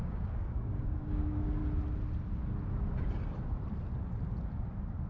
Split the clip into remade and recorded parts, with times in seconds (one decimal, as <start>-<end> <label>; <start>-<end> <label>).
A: 0.0-1.6 remade; 1.6-5.1 recorded